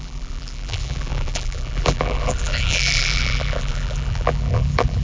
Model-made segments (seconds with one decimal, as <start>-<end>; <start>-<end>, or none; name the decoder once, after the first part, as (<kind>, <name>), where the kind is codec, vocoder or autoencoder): 0.0-5.0 (vocoder, BigVGAN v2)